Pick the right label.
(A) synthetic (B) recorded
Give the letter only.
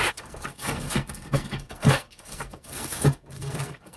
A